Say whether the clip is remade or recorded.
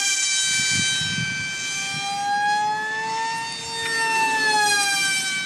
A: recorded